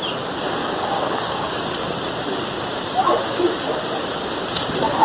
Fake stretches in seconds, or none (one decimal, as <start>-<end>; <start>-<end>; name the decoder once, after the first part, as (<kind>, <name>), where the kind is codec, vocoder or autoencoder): 0.6-1.6 (codec, DAC)

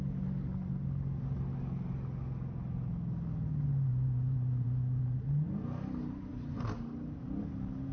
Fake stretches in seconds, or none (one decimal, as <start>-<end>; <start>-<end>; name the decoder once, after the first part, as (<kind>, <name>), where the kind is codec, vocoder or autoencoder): 3.9-5.0 (vocoder, Vocos)

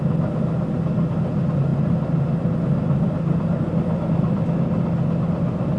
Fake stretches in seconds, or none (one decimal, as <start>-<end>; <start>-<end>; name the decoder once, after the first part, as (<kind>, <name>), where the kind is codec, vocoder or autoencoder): none

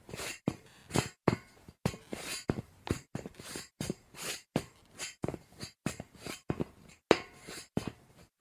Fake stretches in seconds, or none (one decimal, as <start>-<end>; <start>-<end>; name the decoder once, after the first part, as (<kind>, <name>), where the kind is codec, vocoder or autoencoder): 0.0-0.8 (vocoder, BigVGAN v2); 5.4-6.4; 7.4-8.4

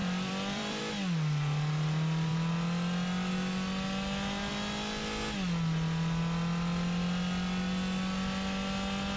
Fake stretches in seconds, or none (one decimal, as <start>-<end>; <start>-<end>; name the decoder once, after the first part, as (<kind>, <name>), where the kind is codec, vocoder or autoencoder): 0.0-0.8 (vocoder, BigVGAN v2)